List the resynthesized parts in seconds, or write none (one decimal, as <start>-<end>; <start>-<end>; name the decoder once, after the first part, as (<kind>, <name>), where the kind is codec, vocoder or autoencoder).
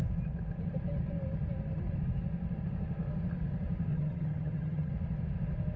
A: 3.9-4.9 (vocoder, HiFi-GAN)